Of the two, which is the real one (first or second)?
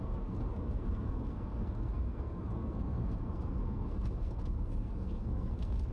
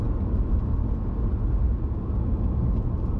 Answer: second